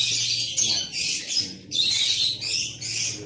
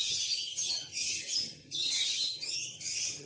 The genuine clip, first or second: first